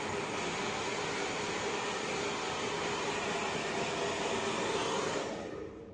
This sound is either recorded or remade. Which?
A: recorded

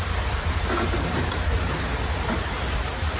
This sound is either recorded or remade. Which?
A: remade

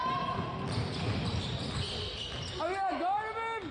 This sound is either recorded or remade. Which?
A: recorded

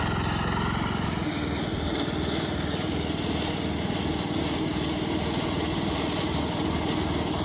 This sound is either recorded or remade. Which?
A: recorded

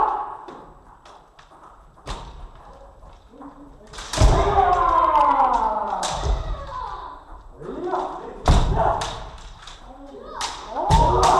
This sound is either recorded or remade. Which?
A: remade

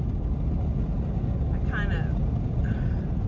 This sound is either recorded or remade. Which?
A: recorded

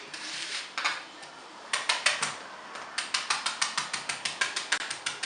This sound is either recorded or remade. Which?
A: recorded